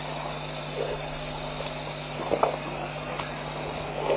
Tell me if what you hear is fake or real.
real